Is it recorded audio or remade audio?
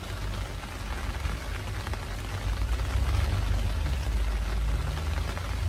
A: recorded